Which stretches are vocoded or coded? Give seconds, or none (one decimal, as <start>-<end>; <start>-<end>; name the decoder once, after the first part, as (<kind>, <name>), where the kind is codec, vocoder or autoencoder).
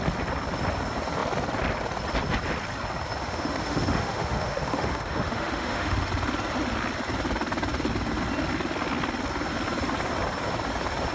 3.2-6.1 (autoencoder, DAC-VAE)